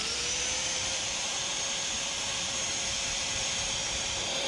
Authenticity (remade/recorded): remade